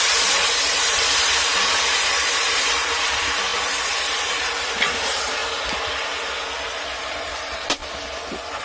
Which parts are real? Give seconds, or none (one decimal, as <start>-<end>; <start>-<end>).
5.4-7.0; 7.8-8.6